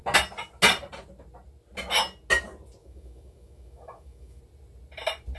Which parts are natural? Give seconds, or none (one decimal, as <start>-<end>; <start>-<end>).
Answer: 0.0-2.8; 4.4-5.4